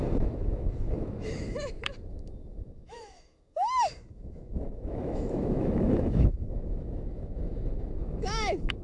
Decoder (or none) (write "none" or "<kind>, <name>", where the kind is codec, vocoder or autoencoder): autoencoder, DAC-VAE